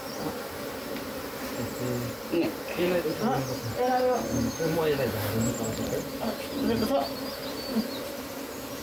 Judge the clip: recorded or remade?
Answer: recorded